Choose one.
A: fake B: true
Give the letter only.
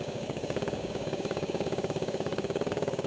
A